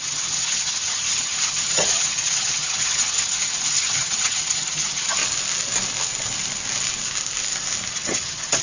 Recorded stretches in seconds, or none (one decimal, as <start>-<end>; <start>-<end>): 5.2-7.9